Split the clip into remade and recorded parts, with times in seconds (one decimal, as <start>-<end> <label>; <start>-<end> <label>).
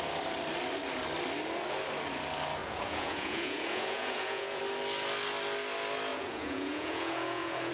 0.0-2.6 recorded; 2.6-4.6 remade; 4.6-6.1 recorded; 6.1-7.7 remade